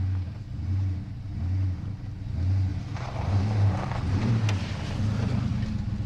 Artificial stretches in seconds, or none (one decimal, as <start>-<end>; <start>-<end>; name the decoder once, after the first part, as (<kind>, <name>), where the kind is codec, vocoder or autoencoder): 2.7-5.5 (vocoder, BigVGAN v2)

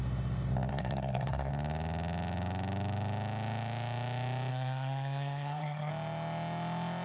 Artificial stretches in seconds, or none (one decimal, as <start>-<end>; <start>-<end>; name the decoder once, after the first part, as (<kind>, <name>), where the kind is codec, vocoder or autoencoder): 0.7-1.5 (codec, SNAC); 4.5-5.9